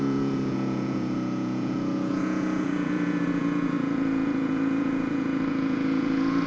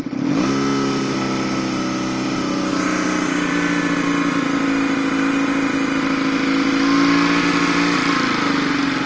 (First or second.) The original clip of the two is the second